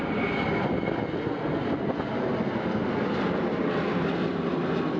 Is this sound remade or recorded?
recorded